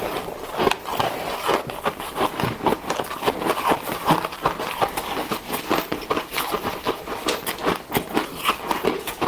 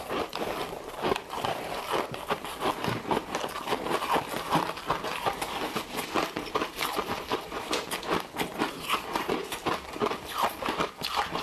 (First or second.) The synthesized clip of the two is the second